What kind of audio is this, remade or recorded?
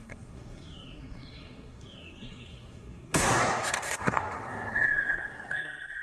remade